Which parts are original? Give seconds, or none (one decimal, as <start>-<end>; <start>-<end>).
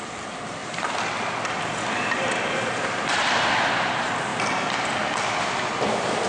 none